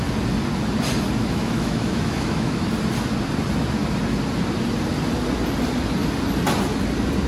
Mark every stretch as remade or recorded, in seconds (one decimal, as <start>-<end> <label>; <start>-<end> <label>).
0.0-1.2 recorded; 1.2-2.7 remade; 2.7-7.3 recorded